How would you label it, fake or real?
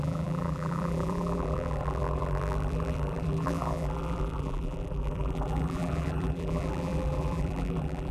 fake